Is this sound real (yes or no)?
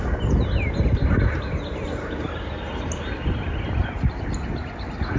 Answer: yes